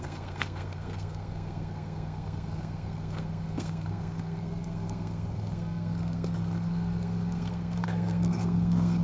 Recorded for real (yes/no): no